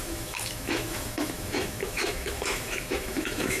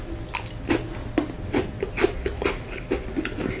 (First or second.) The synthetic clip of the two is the first